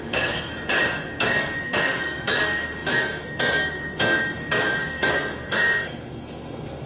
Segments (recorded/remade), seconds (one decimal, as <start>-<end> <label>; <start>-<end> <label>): 0.0-0.5 remade; 0.5-1.2 recorded; 1.2-6.9 remade